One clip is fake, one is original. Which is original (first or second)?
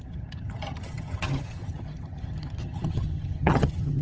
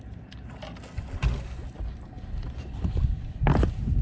second